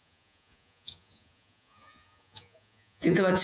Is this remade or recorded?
remade